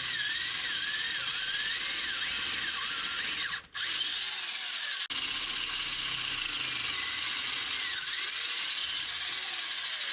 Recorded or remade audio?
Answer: recorded